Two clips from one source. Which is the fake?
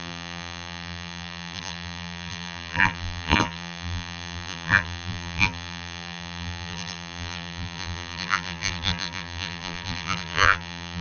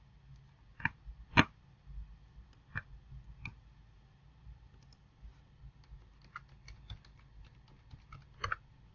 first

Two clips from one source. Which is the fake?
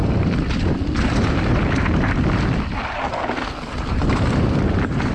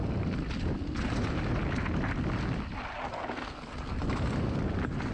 first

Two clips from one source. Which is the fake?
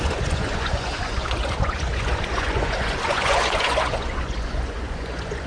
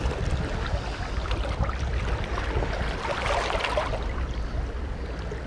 first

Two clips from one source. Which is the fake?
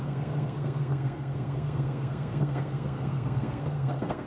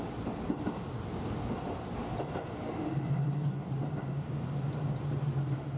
first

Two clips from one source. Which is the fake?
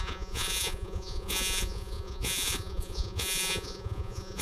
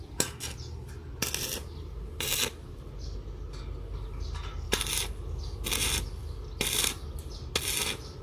first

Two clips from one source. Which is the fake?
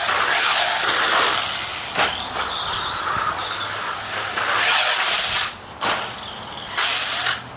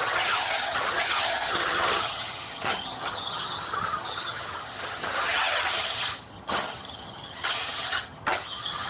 second